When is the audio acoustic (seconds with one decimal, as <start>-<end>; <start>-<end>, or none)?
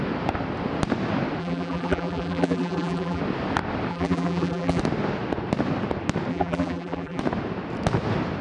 0.0-1.4; 3.2-3.9; 4.8-6.3; 7.2-8.4